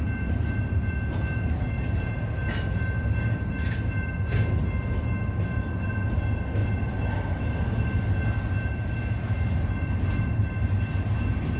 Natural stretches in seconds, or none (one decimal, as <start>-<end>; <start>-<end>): 0.0-11.6